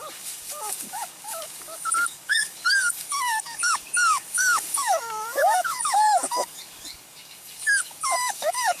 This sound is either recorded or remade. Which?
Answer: remade